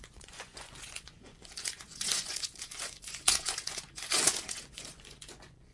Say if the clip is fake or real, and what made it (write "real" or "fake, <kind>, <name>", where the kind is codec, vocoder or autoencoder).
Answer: fake, vocoder, Vocos